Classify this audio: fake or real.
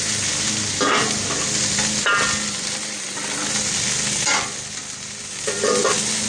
real